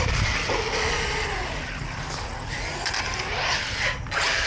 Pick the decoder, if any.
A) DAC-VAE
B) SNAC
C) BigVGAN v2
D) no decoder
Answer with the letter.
D